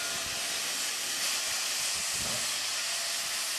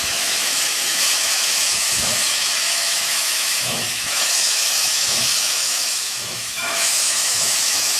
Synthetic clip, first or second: second